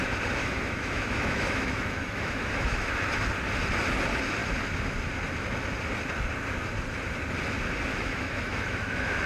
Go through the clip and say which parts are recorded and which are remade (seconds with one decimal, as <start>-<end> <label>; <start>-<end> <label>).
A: 0.0-0.4 recorded; 0.4-2.9 remade; 2.9-7.9 recorded; 7.9-9.3 remade